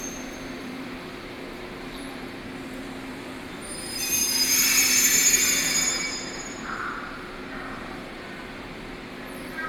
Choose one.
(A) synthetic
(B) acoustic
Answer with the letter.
A